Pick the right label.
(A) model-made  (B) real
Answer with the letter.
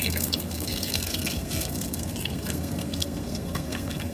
A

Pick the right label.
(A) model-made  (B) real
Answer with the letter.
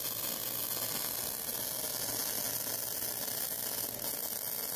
B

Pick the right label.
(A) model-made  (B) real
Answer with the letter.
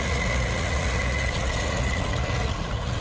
A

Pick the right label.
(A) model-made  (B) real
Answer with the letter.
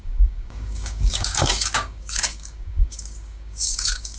A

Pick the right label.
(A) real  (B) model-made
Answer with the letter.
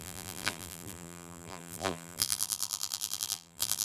B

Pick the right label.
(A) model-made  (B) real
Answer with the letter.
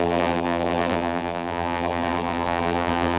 A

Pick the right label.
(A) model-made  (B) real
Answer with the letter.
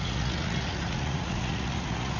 A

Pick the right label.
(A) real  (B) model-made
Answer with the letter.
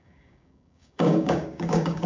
B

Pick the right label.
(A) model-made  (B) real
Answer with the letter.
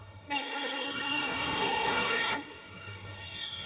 A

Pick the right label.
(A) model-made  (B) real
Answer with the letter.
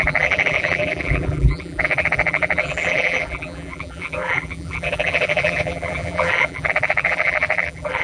A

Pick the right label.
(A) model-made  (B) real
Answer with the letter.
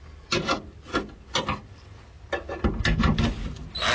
B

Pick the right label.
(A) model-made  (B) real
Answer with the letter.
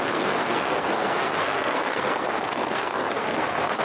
A